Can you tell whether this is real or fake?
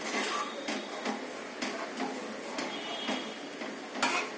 real